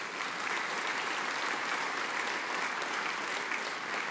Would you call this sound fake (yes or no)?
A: no